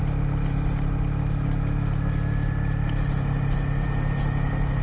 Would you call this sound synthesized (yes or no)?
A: no